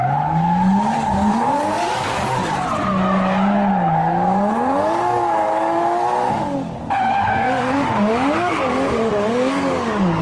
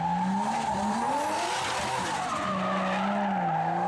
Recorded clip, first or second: second